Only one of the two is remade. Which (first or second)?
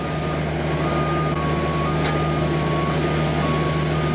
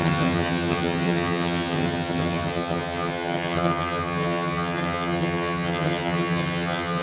second